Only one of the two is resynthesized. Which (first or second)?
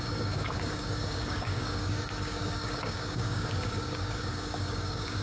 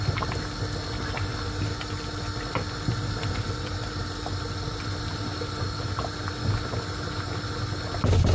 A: first